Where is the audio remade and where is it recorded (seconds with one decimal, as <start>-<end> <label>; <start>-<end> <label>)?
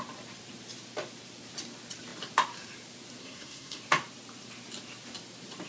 0.0-3.2 recorded; 3.2-3.8 remade; 3.8-5.7 recorded